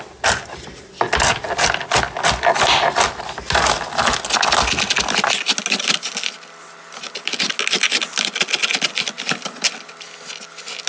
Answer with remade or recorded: recorded